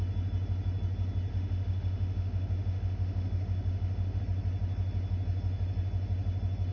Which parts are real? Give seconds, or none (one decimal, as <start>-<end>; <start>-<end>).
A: 0.0-1.3; 4.2-6.7